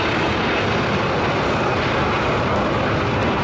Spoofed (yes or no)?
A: no